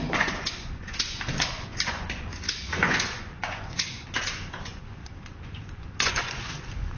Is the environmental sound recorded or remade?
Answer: remade